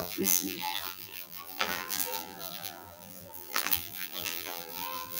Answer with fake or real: fake